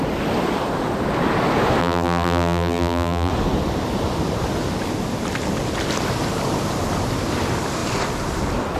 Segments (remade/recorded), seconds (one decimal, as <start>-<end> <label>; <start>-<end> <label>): 0.0-1.8 recorded; 1.8-3.3 remade; 3.3-8.8 recorded